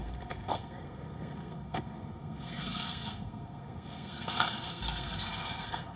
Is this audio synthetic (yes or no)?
yes